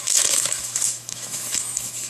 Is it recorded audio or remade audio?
remade